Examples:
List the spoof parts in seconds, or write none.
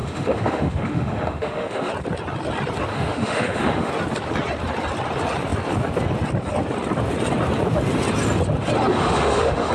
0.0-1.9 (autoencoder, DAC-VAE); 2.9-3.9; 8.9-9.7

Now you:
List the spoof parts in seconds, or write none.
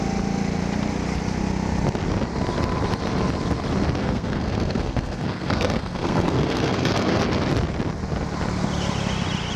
4.0-7.2 (codec, SNAC)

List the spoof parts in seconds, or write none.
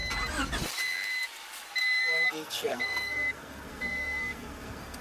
1.8-5.0 (codec, SNAC)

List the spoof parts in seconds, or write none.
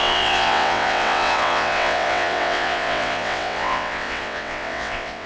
0.0-5.3 (vocoder, WaveNeXt)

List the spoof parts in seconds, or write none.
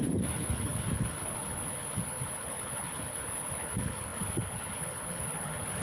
0.0-5.8 (codec, HILCodec)